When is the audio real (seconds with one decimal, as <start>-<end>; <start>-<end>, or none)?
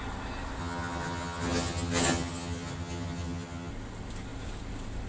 0.0-0.6; 3.7-5.1